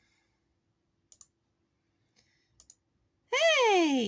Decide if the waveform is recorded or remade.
recorded